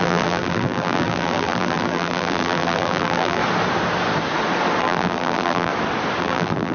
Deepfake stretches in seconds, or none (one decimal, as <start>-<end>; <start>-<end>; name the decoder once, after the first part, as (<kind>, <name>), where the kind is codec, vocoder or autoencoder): 0.0-3.4 (vocoder, BigVGAN v2); 4.8-5.7; 6.2-6.7